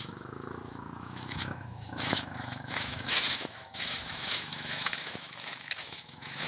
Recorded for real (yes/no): no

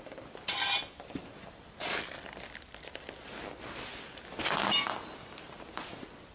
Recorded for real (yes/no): yes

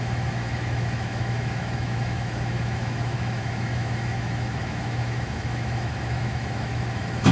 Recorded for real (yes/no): no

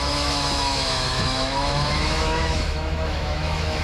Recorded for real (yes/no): no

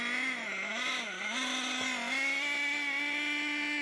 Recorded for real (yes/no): yes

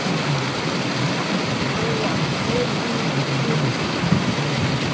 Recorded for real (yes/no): yes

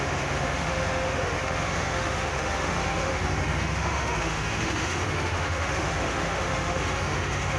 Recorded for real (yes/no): no